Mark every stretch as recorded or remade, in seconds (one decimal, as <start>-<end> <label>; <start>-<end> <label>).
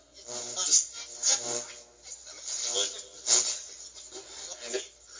0.0-5.2 recorded